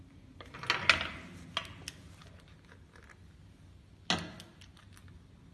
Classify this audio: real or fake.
real